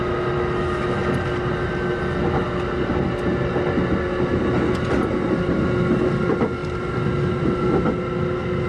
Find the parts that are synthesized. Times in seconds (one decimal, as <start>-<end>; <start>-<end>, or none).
none